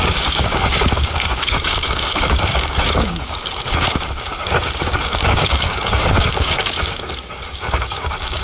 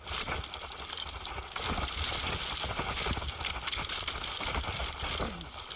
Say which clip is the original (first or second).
second